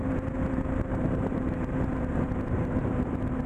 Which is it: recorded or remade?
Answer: remade